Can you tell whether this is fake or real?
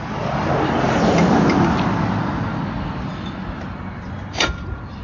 real